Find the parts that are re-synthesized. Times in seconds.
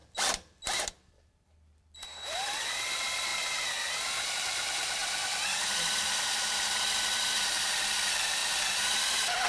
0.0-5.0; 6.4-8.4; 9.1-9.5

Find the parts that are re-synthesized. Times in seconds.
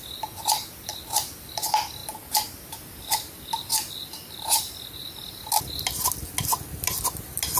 none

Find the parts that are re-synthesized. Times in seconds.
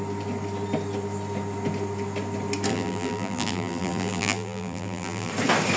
2.7-5.3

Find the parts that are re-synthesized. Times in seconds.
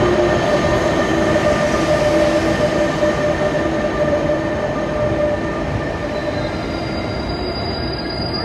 0.0-1.1; 4.0-6.0; 7.2-8.4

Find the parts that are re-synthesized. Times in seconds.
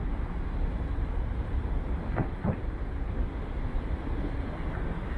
0.7-2.6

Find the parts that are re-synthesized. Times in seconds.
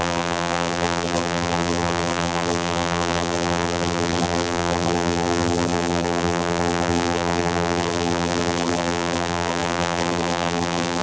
0.0-11.0